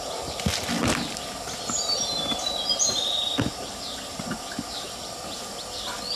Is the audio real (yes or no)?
yes